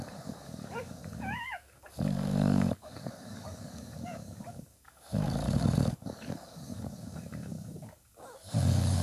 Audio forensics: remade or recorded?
remade